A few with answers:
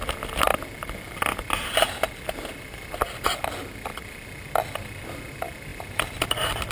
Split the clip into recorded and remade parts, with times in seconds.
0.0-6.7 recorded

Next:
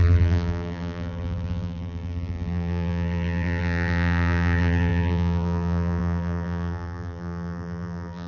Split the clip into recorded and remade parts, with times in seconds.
0.0-8.3 remade

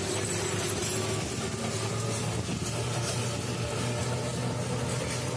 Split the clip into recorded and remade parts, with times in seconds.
0.0-5.4 recorded

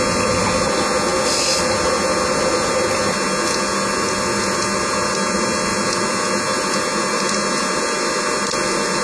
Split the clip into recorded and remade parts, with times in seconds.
0.0-9.0 recorded

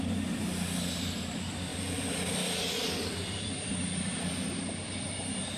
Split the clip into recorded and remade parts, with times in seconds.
0.0-1.7 recorded; 1.7-5.1 remade; 5.1-5.6 recorded

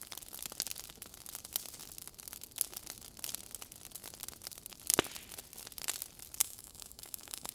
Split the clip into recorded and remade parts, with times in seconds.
0.0-6.4 recorded; 6.4-7.5 remade

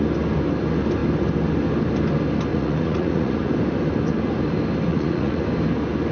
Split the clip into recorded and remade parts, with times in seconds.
0.0-2.5 recorded; 2.5-3.5 remade; 3.5-4.9 recorded; 4.9-5.4 remade; 5.4-6.1 recorded

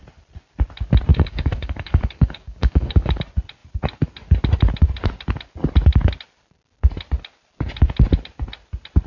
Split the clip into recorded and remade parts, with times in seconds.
0.0-1.1 recorded; 1.1-3.2 remade; 3.2-9.1 recorded